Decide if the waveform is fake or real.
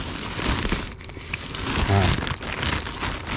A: real